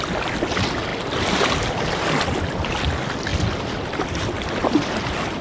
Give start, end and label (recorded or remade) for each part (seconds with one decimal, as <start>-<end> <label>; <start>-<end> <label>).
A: 0.0-5.4 recorded